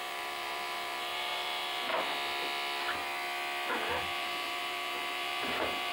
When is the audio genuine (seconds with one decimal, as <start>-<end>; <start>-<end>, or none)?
1.9-3.7